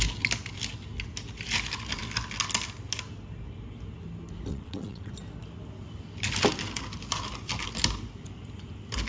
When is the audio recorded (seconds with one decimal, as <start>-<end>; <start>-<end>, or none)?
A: 0.0-4.5; 5.1-9.1